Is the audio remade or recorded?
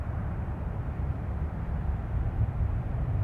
remade